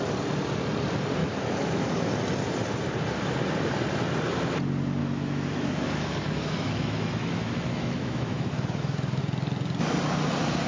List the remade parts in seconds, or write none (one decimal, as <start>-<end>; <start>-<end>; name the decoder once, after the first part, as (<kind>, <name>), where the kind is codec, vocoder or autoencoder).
1.2-2.1 (autoencoder, DAC-VAE); 5.0-9.2